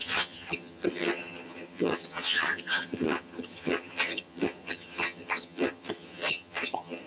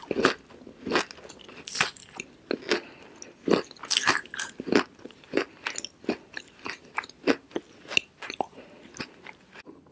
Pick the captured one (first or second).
second